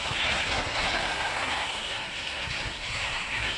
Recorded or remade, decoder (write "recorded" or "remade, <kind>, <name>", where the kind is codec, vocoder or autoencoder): remade, codec, SNAC